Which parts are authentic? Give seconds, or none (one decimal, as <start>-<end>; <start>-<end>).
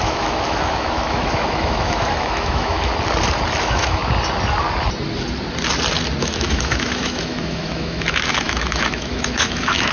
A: 2.9-3.6; 4.0-6.2